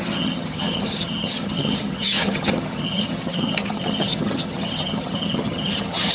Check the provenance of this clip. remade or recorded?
remade